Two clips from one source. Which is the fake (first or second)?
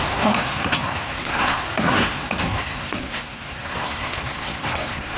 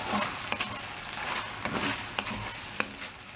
first